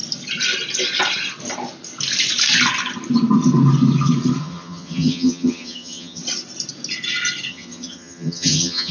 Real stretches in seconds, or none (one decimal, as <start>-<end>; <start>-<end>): 0.0-4.4; 6.2-7.5